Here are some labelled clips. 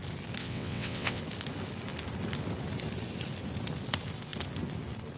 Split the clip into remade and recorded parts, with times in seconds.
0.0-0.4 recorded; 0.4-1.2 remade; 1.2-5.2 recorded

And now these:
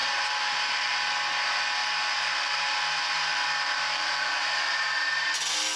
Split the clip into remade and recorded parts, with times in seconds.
0.0-0.9 remade; 0.9-1.8 recorded; 1.8-5.3 remade; 5.3-5.8 recorded

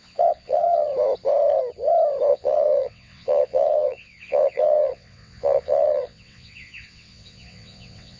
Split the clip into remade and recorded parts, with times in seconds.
0.0-0.9 remade; 0.9-2.3 recorded; 2.3-8.2 remade

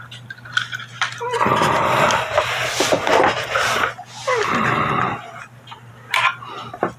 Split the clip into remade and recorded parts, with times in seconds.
0.0-2.6 remade; 2.6-5.9 recorded; 5.9-7.0 remade

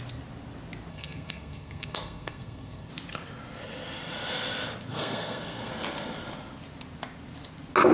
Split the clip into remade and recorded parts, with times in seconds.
0.0-0.9 recorded; 0.9-2.9 remade; 2.9-4.9 recorded; 4.9-5.7 remade; 5.7-7.9 recorded

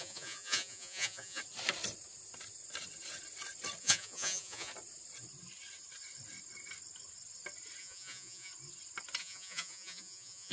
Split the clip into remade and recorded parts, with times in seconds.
0.0-1.4 remade; 1.4-3.8 recorded; 3.8-4.7 remade; 4.7-7.8 recorded; 7.8-8.5 remade; 8.5-9.2 recorded; 9.2-10.5 remade